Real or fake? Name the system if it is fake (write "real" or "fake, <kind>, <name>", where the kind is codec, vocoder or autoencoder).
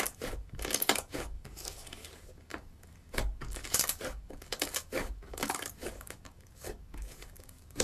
fake, codec, DAC